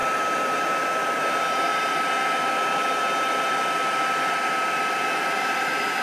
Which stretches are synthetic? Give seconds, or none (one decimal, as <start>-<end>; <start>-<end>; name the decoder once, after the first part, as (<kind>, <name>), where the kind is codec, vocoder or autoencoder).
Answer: 0.0-1.7 (vocoder, BigVGAN v2); 5.1-6.0

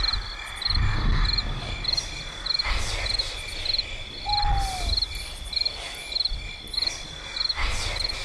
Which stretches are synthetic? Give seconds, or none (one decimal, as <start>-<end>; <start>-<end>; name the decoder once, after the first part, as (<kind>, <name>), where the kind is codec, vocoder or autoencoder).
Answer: none